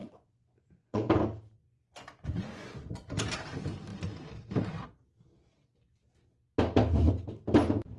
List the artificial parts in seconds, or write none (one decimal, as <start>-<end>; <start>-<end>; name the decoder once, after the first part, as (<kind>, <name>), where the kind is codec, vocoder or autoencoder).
0.0-1.1 (vocoder, Vocos); 1.6-3.2